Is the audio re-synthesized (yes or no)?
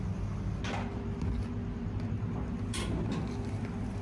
no